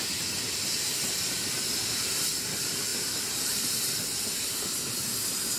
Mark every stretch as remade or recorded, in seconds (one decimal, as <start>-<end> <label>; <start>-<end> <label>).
0.0-2.9 recorded; 2.9-4.6 remade; 4.6-5.6 recorded